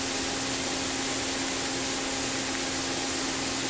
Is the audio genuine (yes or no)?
yes